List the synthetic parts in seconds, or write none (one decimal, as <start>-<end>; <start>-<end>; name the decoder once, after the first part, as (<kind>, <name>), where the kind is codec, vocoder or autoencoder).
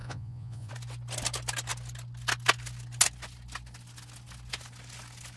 0.0-0.7 (vocoder, Vocos)